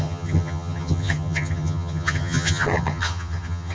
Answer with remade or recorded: remade